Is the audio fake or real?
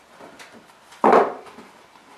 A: fake